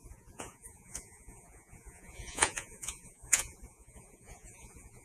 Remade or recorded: remade